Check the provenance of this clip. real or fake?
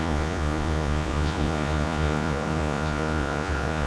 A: fake